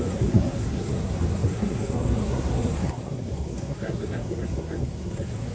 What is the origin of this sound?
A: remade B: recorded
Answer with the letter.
A